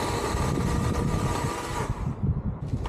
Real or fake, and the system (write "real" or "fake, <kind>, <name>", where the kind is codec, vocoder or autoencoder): fake, vocoder, BigVGAN v2